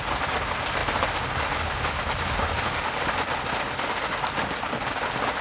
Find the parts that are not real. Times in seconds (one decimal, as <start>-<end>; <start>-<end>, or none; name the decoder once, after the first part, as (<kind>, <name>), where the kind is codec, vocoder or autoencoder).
none